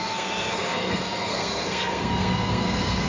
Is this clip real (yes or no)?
no